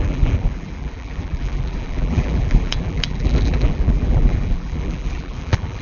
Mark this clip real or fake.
fake